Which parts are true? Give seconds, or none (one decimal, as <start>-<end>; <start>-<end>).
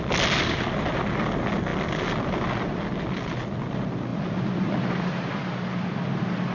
0.0-6.5